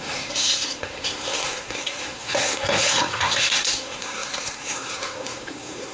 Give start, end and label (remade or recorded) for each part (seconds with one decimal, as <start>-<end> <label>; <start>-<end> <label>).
0.0-5.9 remade